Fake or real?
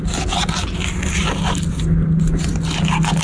real